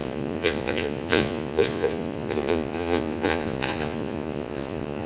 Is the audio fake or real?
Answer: fake